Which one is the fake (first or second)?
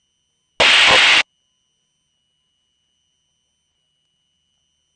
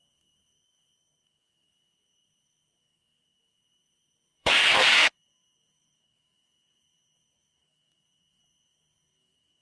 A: second